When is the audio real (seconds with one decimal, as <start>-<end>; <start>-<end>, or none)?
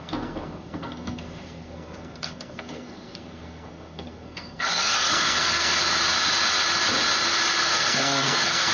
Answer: 5.8-7.6